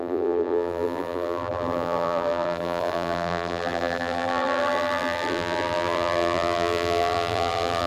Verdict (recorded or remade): remade